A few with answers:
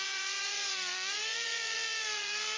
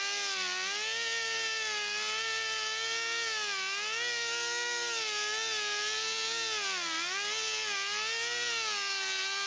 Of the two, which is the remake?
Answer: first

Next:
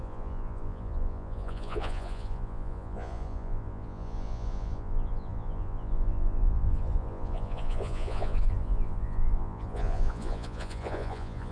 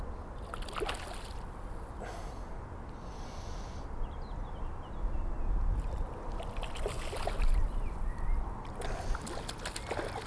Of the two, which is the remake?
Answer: first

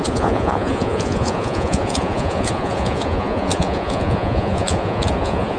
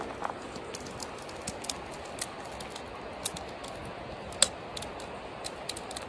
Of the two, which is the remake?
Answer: first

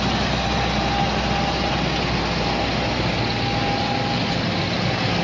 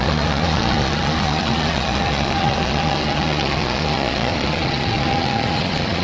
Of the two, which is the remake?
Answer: second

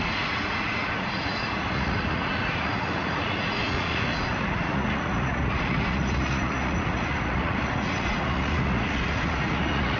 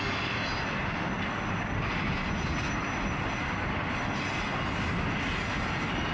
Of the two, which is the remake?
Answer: first